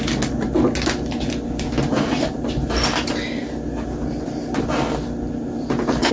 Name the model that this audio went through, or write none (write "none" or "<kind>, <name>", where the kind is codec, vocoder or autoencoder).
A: none